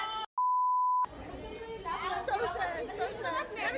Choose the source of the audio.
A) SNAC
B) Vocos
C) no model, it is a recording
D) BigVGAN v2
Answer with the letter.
C